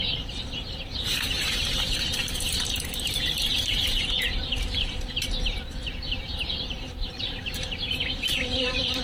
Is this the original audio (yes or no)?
no